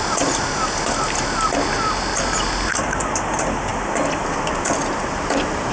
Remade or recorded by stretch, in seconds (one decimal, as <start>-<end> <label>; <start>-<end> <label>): 0.0-5.7 recorded